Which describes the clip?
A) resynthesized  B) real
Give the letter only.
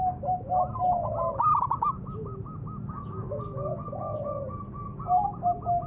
B